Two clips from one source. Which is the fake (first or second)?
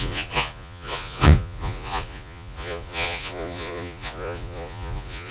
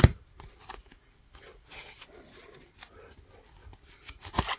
first